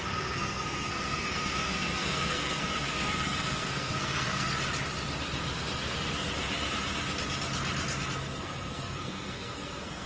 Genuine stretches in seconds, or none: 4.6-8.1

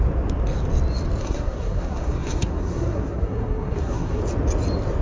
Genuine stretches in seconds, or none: 0.0-1.2; 4.2-5.0

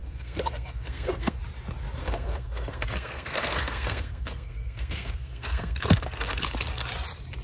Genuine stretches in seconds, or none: 1.4-2.0; 6.4-7.4

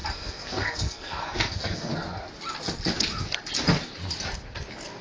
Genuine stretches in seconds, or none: 1.9-5.0